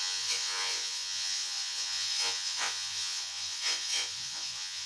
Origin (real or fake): fake